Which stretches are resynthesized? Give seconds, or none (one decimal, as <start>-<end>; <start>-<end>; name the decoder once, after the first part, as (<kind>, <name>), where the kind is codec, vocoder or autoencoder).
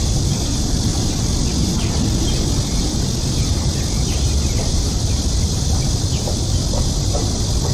0.0-0.9 (vocoder, BigVGAN v2); 2.4-7.7